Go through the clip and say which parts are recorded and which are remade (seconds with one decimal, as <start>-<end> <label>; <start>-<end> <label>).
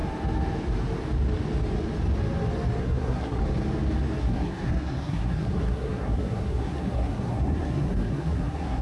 0.0-2.8 recorded; 2.8-3.4 remade; 3.4-4.2 recorded; 4.2-8.8 remade